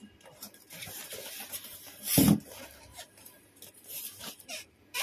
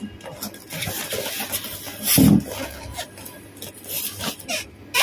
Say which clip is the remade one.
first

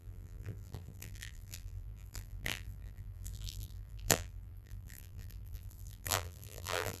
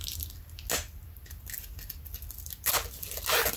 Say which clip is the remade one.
first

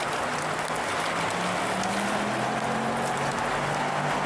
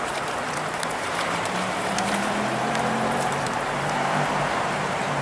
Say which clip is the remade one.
second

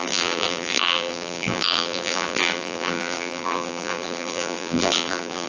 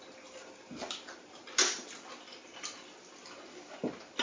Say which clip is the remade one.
first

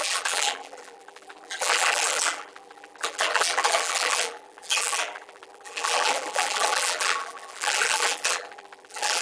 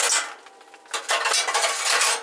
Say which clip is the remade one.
first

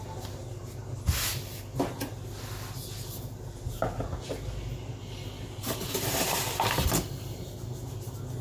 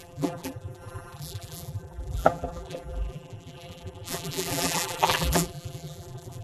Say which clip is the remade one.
second